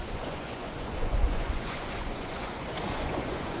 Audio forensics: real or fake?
fake